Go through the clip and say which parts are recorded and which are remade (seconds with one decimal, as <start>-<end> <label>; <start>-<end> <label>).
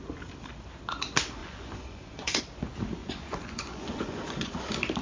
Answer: 0.0-1.4 recorded; 1.4-2.4 remade; 2.4-3.0 recorded; 3.0-4.5 remade; 4.5-5.0 recorded